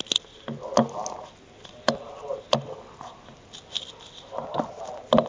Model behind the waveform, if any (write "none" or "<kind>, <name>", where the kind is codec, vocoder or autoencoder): none